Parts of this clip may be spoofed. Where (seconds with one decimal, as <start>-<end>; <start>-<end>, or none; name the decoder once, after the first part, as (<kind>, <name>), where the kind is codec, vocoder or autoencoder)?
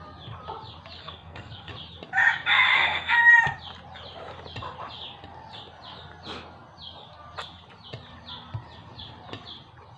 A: 1.0-1.7 (codec, SNAC); 2.7-3.3